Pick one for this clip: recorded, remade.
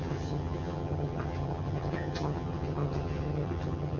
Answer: remade